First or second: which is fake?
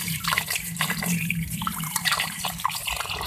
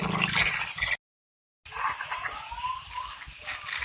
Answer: first